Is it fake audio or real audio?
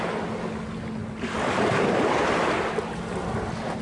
real